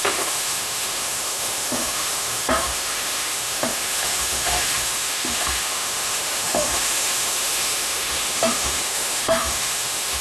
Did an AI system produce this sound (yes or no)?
yes